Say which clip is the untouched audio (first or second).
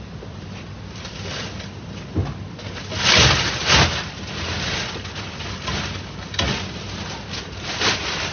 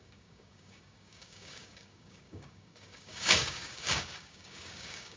first